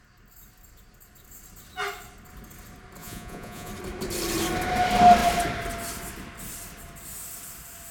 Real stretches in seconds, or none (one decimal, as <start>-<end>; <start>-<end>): 0.0-3.0; 3.7-7.9